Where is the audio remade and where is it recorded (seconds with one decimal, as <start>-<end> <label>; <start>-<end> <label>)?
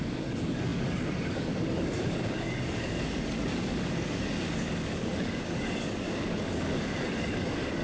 0.0-7.8 remade